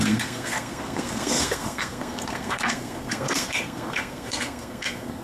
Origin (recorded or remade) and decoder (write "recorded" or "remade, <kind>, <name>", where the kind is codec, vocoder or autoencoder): remade, codec, SNAC